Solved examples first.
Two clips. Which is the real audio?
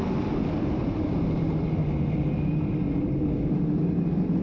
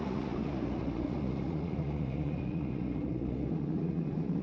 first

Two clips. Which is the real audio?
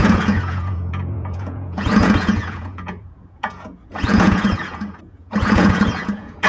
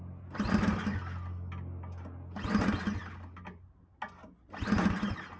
second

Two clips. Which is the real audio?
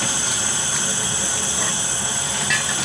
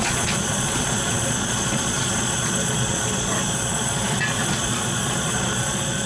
first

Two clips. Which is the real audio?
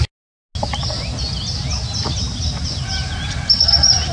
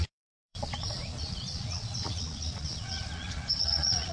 first